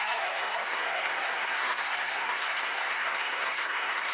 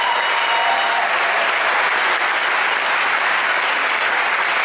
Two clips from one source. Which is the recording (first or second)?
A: second